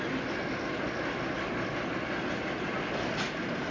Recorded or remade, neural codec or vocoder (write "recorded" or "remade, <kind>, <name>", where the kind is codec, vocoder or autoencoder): recorded